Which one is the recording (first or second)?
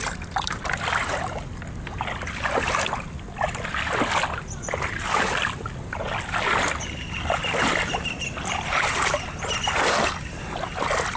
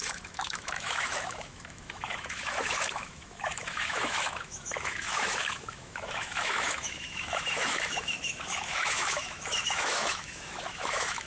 first